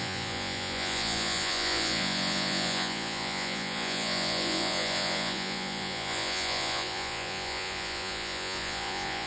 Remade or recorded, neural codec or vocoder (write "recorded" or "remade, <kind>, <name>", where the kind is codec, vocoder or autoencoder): remade, vocoder, Vocos